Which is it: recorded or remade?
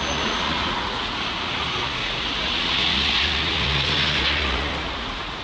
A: remade